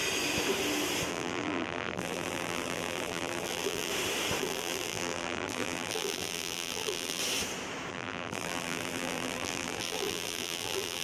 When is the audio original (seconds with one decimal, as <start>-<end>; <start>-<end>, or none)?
0.0-1.1; 3.9-4.4; 7.2-7.9

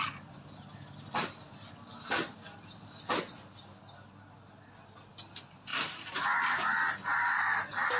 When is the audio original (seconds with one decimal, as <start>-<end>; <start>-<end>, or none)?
0.0-8.0

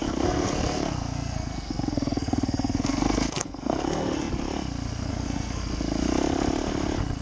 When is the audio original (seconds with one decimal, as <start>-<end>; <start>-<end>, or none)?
4.3-5.1; 5.6-7.2

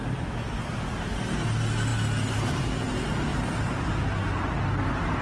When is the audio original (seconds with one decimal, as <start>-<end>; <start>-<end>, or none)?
0.9-3.3; 4.0-5.2

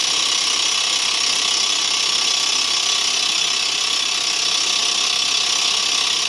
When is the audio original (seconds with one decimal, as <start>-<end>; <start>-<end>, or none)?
0.0-6.3